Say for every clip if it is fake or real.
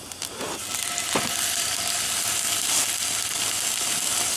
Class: real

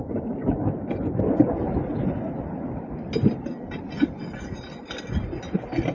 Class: real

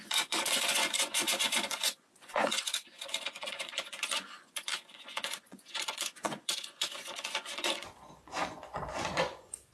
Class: fake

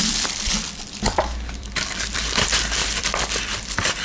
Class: fake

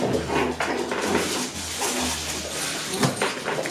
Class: real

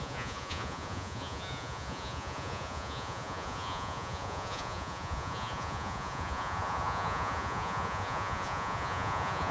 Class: fake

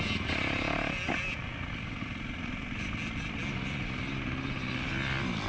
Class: real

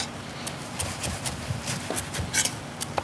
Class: real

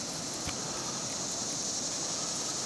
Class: real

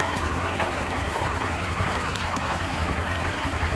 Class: fake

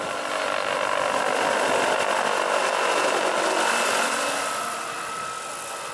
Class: real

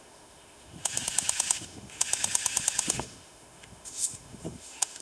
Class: fake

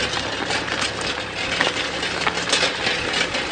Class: real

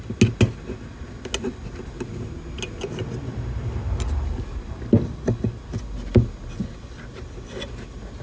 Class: real